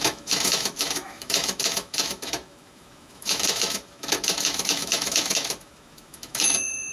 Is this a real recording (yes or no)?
no